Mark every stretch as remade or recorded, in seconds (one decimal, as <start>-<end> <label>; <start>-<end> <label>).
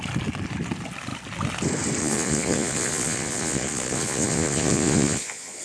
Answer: 0.0-2.0 recorded; 2.0-5.6 remade